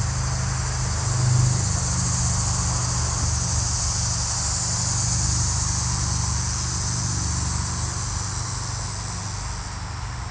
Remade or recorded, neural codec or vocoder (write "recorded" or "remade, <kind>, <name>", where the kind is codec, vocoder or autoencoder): recorded